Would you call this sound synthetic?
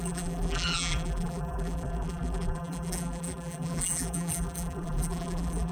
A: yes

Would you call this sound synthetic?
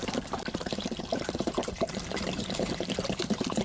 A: yes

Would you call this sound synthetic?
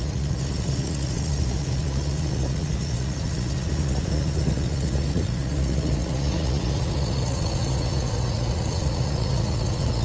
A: yes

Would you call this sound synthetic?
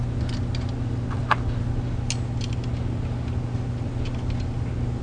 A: no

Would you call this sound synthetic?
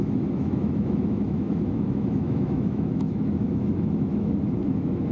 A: yes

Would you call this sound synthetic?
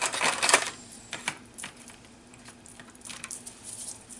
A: yes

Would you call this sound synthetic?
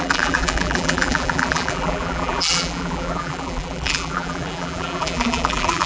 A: yes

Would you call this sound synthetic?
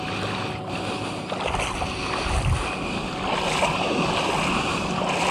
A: no